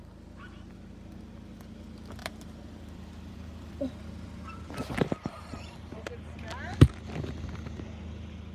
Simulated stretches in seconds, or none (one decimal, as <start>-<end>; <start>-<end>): 2.2-5.9